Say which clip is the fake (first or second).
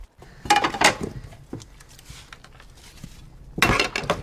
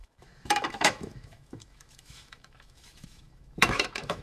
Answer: second